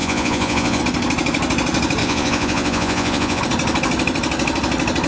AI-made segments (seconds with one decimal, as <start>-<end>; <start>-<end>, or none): 0.0-0.8; 2.0-3.4